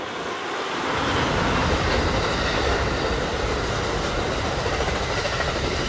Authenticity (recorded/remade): recorded